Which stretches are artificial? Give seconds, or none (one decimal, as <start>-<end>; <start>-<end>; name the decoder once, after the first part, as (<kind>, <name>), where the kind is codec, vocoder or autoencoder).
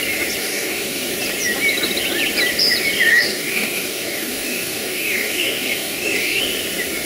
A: 0.4-1.1 (codec, DAC); 3.1-6.4